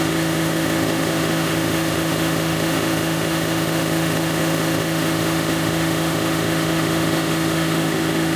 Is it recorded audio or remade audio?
remade